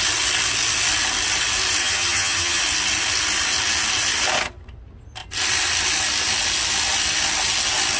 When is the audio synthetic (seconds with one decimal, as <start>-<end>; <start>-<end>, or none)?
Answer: 1.8-2.6